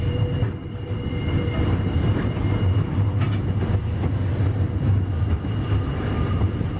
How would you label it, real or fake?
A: real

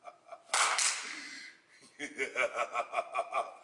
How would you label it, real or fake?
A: real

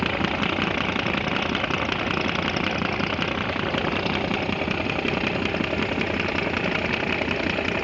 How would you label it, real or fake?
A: real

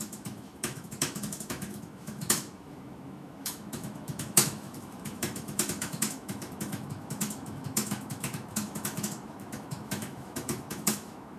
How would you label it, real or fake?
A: fake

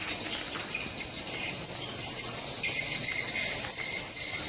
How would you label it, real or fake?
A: real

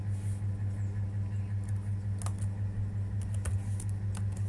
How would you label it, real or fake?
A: real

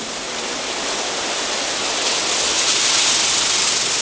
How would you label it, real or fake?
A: real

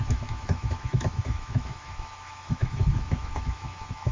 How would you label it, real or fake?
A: fake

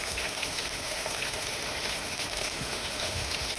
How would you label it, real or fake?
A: fake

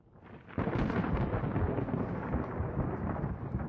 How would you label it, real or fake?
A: real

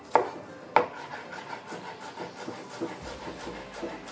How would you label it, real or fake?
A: real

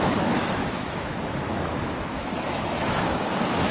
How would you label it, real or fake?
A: fake